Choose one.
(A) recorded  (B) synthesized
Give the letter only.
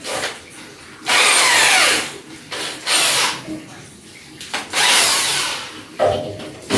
B